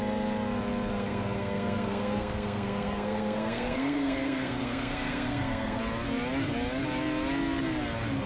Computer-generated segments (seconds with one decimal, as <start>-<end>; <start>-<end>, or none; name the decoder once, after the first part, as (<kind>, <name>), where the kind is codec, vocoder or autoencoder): 0.9-5.8 (codec, SNAC)